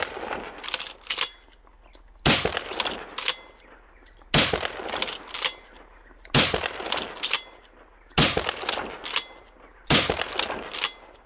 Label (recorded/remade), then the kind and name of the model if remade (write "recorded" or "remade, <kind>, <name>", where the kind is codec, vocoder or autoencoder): recorded